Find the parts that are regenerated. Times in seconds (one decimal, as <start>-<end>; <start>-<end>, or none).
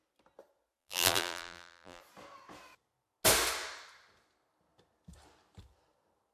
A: 0.8-2.0